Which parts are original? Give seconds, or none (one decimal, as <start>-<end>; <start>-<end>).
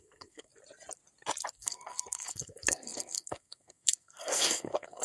0.5-1.5